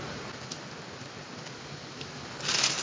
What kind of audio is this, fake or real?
real